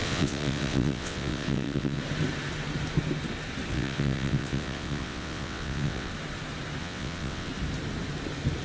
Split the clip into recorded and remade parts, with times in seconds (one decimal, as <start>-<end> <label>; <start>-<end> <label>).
0.0-2.0 remade; 2.0-3.7 recorded; 3.7-6.1 remade; 6.1-6.8 recorded; 6.8-7.5 remade; 7.5-8.6 recorded